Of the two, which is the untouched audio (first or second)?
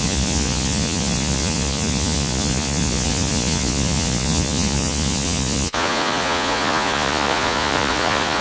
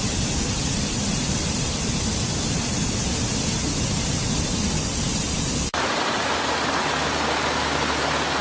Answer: second